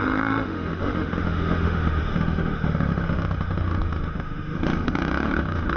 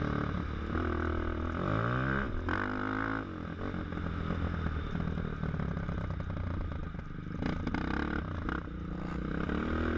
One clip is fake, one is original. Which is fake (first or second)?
first